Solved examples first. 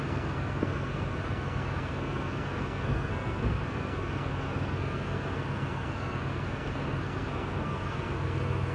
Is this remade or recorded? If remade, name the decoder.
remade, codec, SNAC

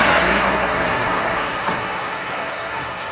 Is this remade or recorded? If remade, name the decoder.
remade, codec, SNAC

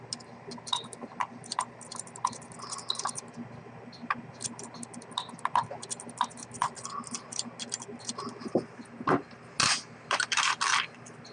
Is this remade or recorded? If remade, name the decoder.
recorded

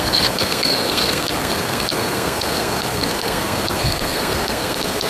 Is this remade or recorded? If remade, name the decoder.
remade, codec, SNAC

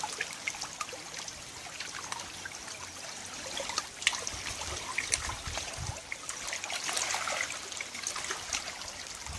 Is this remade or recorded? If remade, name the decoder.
recorded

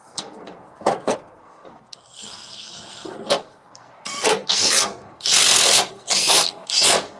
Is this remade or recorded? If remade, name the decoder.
remade, codec, SNAC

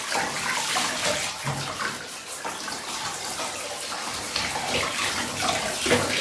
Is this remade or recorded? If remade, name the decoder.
recorded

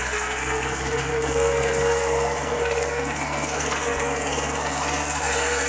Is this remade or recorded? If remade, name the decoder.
remade, codec, SNAC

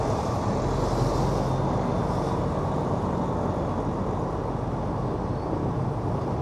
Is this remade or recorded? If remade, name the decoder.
recorded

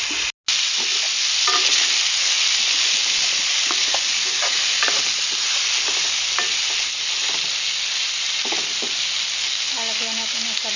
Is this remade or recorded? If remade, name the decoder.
recorded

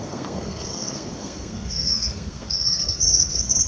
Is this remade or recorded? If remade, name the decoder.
remade, codec, SNAC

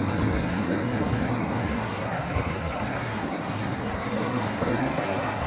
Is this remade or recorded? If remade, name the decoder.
remade, codec, SNAC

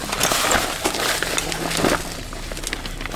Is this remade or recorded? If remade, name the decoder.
recorded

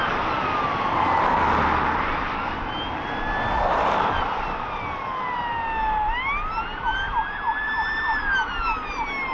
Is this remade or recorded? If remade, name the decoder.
recorded